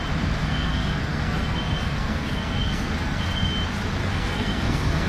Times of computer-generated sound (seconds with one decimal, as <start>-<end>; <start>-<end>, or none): 0.4-3.5; 4.0-5.1

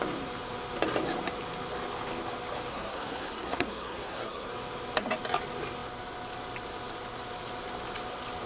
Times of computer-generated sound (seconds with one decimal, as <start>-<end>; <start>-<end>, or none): 2.7-4.5

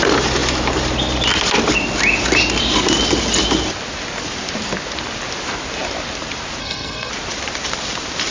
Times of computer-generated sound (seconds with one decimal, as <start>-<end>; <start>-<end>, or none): 6.6-7.1